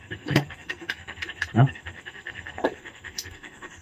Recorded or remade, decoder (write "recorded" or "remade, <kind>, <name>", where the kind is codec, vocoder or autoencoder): remade, codec, SNAC